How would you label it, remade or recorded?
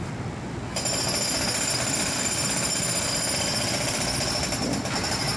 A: remade